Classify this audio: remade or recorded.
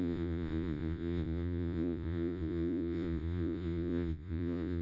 remade